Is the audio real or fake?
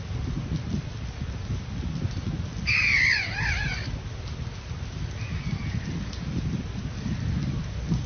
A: real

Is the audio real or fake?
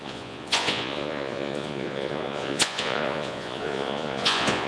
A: fake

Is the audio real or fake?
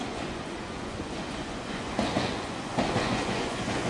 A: fake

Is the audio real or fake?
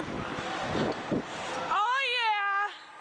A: real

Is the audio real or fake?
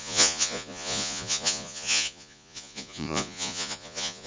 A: fake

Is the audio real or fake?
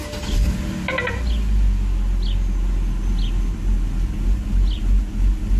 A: real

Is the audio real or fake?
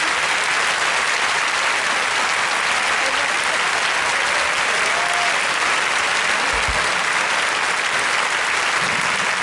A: real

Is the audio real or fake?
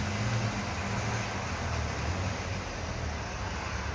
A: real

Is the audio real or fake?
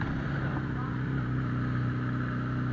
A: real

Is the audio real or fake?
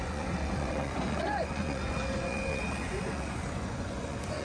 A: fake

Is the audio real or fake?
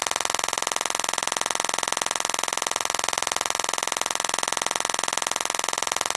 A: real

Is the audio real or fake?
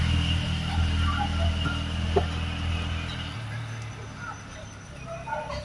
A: real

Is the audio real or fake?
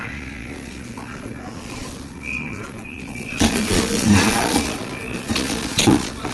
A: fake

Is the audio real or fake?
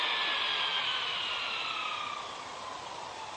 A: real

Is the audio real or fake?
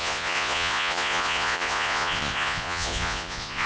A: fake